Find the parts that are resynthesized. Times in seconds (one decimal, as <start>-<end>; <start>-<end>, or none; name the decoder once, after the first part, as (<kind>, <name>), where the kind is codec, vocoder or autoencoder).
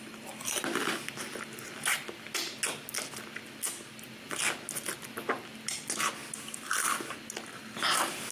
none